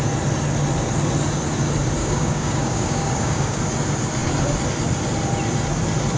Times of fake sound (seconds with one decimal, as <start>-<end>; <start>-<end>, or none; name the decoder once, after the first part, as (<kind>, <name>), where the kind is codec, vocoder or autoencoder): 2.0-3.6 (codec, DAC)